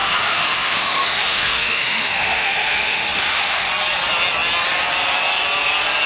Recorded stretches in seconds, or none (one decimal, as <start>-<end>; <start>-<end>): 3.7-6.1